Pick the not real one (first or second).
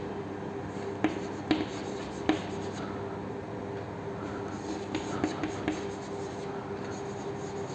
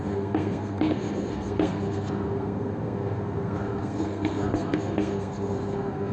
second